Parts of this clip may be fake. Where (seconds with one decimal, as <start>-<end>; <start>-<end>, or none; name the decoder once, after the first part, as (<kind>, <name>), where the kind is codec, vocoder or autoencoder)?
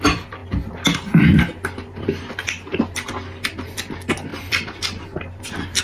4.3-5.8 (vocoder, BigVGAN v2)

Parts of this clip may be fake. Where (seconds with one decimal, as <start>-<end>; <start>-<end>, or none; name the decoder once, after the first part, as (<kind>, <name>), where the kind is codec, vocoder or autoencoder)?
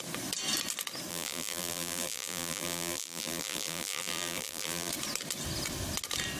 1.1-4.9 (vocoder, BigVGAN v2)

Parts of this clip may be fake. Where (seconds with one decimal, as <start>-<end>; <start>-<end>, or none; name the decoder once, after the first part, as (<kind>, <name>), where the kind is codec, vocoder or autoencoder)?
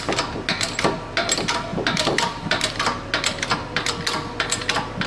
1.7-2.8 (vocoder, BigVGAN v2)